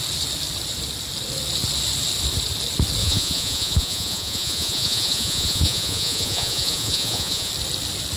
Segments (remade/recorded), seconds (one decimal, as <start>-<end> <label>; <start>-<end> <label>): 0.0-3.0 recorded; 3.0-7.5 remade; 7.5-8.2 recorded